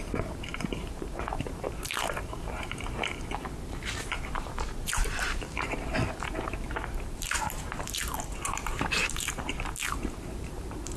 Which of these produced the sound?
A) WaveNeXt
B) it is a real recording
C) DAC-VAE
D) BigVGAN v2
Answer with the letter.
D